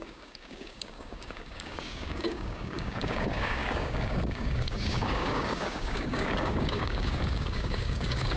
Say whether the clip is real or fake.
fake